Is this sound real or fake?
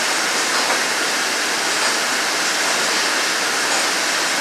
real